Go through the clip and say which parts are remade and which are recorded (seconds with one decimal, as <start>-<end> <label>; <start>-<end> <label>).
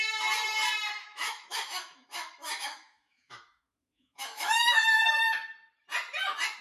0.0-1.0 recorded; 1.0-5.0 remade; 5.0-6.6 recorded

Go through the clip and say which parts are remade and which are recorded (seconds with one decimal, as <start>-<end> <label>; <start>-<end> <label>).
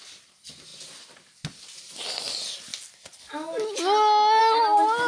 0.0-5.1 recorded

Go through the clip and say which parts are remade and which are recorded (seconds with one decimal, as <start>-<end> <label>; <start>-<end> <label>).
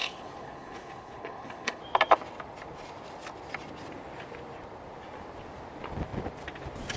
0.0-1.8 remade; 1.8-7.0 recorded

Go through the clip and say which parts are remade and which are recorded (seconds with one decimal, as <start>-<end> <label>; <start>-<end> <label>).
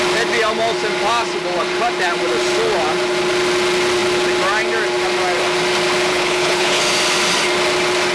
0.0-6.1 recorded; 6.1-6.8 remade; 6.8-8.1 recorded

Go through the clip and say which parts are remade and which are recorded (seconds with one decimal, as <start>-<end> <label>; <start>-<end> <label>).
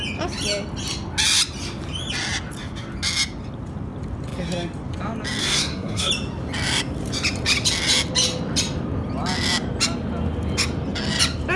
0.0-5.4 recorded; 5.4-6.1 remade; 6.1-11.6 recorded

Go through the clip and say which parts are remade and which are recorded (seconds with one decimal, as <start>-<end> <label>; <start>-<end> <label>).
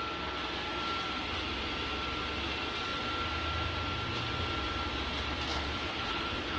0.0-5.5 recorded; 5.5-6.6 remade